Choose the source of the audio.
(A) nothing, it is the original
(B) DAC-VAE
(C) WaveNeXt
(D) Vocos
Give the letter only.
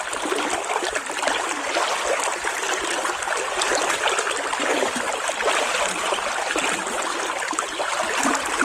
A